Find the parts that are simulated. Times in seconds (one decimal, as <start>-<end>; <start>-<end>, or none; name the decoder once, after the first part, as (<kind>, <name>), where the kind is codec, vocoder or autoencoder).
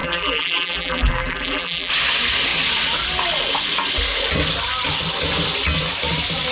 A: 0.0-1.9 (vocoder, BigVGAN v2)